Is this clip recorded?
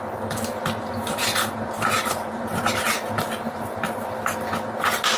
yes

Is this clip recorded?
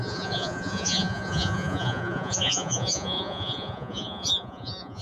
no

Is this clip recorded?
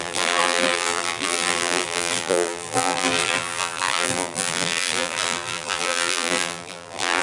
no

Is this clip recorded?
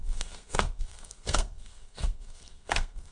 no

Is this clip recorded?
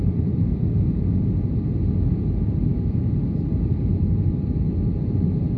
yes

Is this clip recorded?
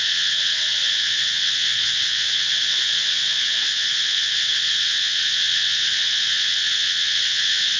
no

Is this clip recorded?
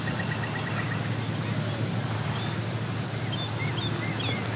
yes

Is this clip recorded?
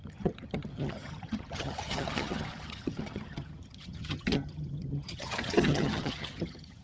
no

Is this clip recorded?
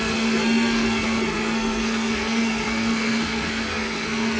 no